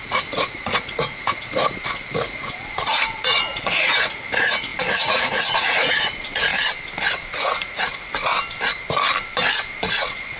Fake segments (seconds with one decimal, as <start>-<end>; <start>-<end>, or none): 0.0-6.5; 7.1-8.3; 9.8-10.4